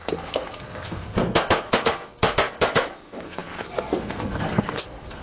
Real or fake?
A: fake